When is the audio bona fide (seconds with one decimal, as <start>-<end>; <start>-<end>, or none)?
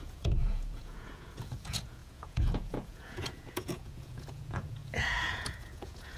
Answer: none